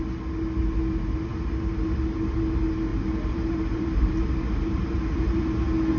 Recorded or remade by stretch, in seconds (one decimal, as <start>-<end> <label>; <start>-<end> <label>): 0.0-2.9 recorded; 2.9-5.4 remade; 5.4-6.0 recorded